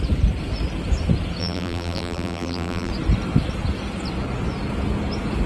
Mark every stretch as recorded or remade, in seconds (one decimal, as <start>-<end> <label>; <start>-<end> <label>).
0.0-1.4 recorded; 1.4-2.9 remade; 2.9-5.5 recorded